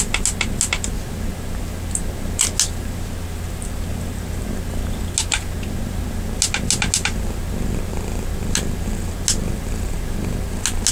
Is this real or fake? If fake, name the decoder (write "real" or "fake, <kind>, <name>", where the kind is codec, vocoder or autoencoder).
real